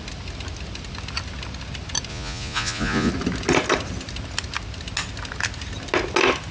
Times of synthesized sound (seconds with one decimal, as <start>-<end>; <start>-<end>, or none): 2.1-3.1